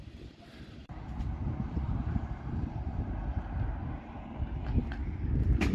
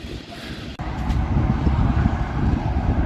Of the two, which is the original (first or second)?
second